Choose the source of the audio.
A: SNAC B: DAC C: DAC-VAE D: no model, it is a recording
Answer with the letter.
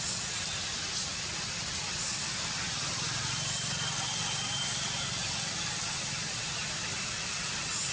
D